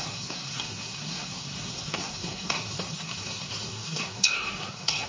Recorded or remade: remade